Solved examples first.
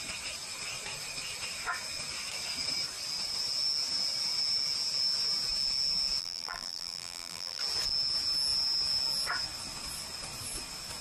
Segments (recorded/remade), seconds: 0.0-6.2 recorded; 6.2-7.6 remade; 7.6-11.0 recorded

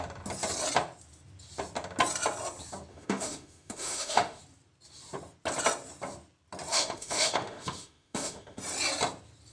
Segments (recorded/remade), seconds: 0.0-2.9 recorded; 2.9-4.4 remade; 4.4-6.7 recorded; 6.7-8.6 remade; 8.6-9.5 recorded

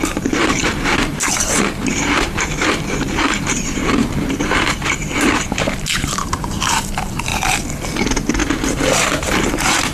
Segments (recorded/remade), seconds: 0.0-7.3 remade; 7.3-8.0 recorded; 8.0-9.9 remade

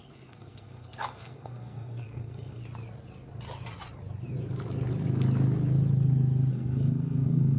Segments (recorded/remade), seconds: 0.0-2.6 remade; 2.6-6.5 recorded; 6.5-7.6 remade

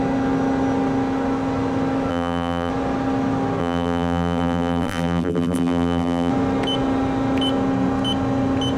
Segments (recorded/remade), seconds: 0.0-2.1 recorded; 2.1-2.7 remade; 2.7-3.6 recorded; 3.6-6.3 remade; 6.3-8.8 recorded

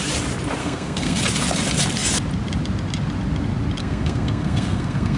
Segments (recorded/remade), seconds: 0.0-0.6 recorded; 0.6-1.2 remade; 1.2-3.8 recorded; 3.8-5.2 remade